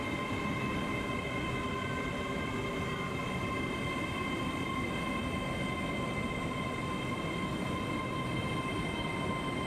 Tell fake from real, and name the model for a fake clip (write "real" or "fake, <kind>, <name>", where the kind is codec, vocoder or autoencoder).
real